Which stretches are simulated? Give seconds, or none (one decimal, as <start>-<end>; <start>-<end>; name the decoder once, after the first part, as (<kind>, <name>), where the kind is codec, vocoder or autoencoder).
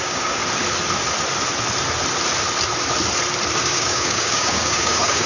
0.0-0.4 (codec, DAC); 3.6-5.3